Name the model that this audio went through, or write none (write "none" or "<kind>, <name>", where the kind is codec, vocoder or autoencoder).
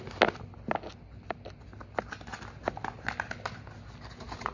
none